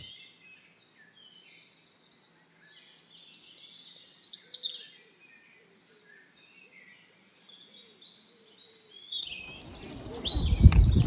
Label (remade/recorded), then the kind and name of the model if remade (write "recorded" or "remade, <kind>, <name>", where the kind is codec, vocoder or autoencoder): recorded